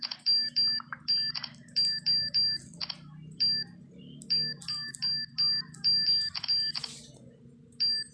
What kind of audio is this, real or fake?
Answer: real